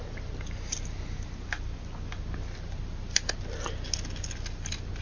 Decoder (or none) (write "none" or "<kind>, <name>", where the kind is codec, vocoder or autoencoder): none